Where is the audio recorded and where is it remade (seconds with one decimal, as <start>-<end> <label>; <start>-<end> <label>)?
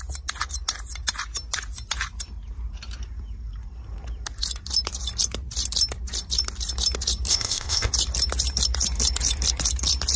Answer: 0.0-7.3 recorded; 7.3-7.9 remade; 7.9-10.2 recorded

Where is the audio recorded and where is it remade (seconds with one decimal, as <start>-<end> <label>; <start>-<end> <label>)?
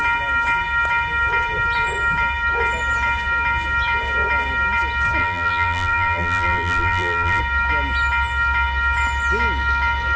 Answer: 0.0-5.2 recorded; 5.2-7.4 remade; 7.4-10.2 recorded